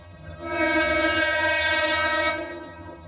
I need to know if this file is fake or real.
fake